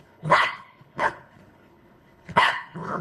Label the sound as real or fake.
fake